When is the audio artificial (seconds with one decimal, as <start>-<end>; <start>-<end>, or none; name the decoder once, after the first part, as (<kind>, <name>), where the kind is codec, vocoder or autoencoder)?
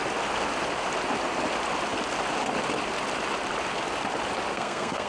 4.5-5.1 (codec, SNAC)